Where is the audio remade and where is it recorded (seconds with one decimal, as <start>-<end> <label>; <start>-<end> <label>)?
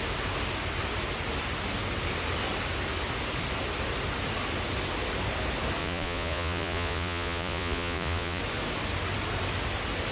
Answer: 0.0-5.8 recorded; 5.8-8.4 remade; 8.4-10.1 recorded